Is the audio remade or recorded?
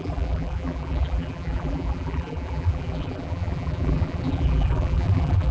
remade